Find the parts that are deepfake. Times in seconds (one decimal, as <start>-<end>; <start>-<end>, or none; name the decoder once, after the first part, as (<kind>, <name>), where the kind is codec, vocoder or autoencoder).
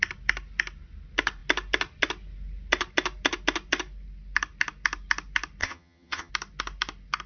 5.6-6.3 (vocoder, HiFi-GAN)